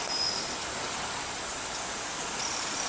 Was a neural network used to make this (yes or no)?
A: no